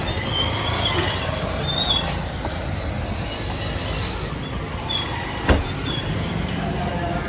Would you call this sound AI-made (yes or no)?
no